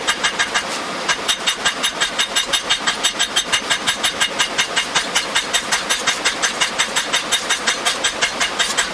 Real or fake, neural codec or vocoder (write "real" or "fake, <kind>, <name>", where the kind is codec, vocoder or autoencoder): real